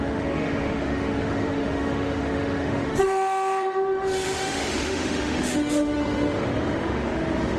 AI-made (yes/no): yes